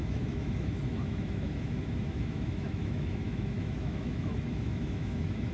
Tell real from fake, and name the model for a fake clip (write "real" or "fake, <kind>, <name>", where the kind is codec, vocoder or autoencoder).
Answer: fake, autoencoder, DAC-VAE